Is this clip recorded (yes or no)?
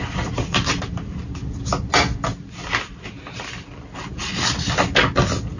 yes